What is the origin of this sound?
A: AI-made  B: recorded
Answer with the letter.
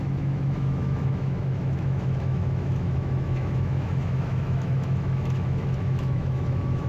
A